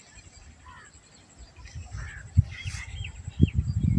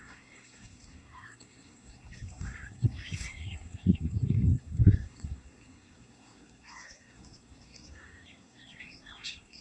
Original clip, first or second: first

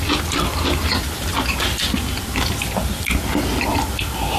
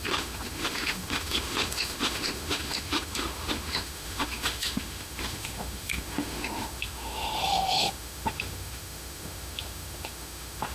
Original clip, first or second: first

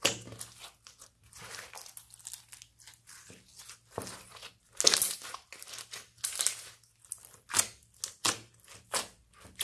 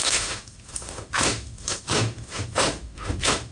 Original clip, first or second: first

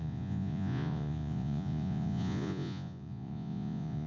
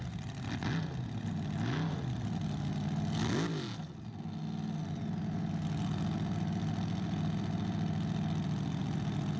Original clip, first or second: second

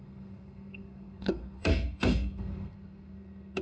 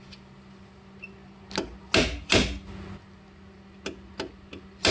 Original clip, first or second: second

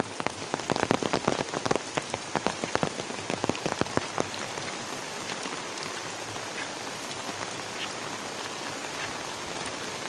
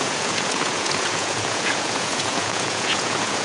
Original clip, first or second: first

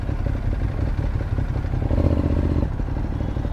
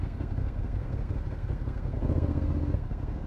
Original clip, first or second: first